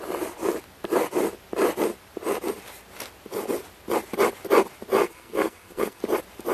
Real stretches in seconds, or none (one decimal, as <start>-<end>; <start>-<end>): 0.0-5.0; 6.0-6.5